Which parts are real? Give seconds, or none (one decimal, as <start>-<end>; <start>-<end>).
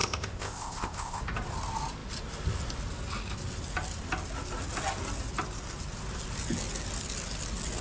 1.2-7.8